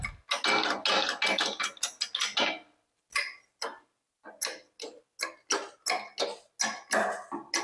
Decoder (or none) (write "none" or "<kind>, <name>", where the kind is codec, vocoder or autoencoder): none